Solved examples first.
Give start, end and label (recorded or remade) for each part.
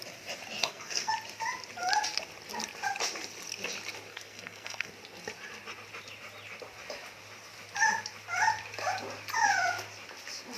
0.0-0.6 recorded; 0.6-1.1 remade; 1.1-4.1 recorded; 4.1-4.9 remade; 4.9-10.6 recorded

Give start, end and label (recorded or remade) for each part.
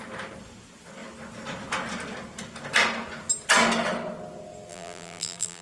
0.0-4.7 recorded; 4.7-5.6 remade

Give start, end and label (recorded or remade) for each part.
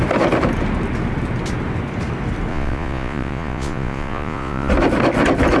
0.0-2.5 recorded; 2.5-4.7 remade; 4.7-5.6 recorded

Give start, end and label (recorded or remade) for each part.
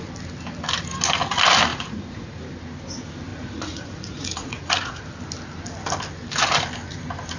0.0-1.7 recorded; 1.7-2.4 remade; 2.4-3.3 recorded; 3.3-5.0 remade; 5.0-7.4 recorded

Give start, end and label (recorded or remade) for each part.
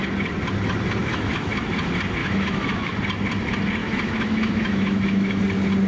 0.0-1.0 recorded; 1.0-1.7 remade; 1.7-2.2 recorded; 2.2-2.9 remade; 2.9-3.8 recorded; 3.8-5.4 remade; 5.4-5.9 recorded